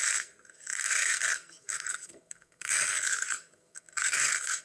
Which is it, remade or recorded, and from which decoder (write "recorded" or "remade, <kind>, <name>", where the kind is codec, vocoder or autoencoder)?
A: remade, codec, SNAC